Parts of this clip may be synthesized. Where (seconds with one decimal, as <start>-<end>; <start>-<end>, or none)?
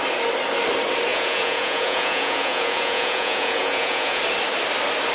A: 1.1-4.2